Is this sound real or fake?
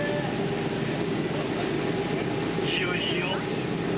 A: real